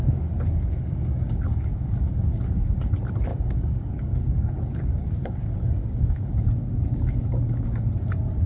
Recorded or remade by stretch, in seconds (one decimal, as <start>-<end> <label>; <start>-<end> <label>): 0.0-2.8 remade; 2.8-3.3 recorded; 3.3-7.9 remade; 7.9-8.5 recorded